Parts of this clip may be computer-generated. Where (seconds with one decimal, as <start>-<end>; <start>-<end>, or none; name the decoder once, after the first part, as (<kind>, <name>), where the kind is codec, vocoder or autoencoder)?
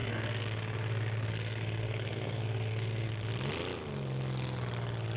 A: 0.0-3.1 (codec, SNAC)